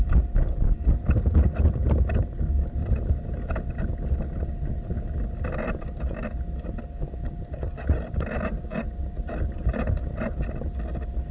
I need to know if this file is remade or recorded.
recorded